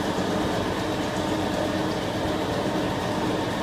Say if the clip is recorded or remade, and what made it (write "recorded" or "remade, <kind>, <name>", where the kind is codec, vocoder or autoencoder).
recorded